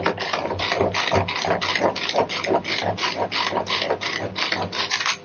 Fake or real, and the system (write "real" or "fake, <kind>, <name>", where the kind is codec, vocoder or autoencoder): real